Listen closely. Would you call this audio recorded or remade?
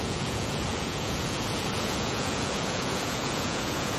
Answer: remade